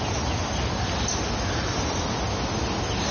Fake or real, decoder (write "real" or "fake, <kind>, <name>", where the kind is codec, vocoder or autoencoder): real